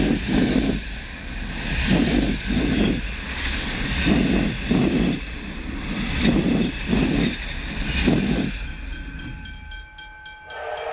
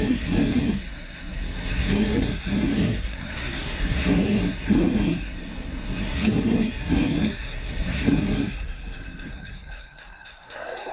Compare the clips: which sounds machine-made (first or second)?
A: second